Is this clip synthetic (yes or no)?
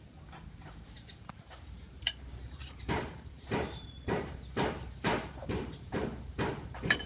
yes